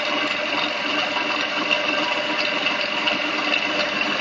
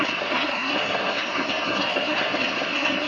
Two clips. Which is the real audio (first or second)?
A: first